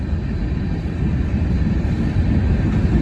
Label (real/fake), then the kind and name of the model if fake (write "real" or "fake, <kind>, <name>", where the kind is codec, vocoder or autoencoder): real